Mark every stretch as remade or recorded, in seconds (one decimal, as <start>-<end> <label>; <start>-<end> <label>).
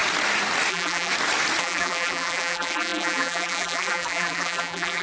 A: 0.0-0.7 recorded; 0.7-1.1 remade; 1.1-1.6 recorded; 1.6-5.0 remade